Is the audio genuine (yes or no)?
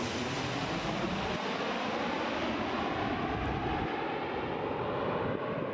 yes